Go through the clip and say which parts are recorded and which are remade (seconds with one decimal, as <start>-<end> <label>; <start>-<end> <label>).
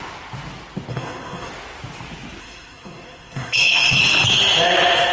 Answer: 0.0-0.9 recorded; 0.9-1.5 remade; 1.5-2.4 recorded; 2.4-4.0 remade; 4.0-5.1 recorded